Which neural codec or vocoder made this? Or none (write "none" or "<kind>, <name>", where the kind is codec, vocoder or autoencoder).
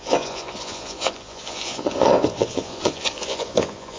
vocoder, Vocos